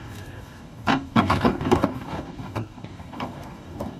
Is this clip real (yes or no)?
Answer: no